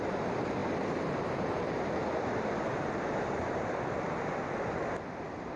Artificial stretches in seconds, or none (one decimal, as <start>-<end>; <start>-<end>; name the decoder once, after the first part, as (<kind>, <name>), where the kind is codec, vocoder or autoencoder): 0.0-5.6 (vocoder, BigVGAN v2)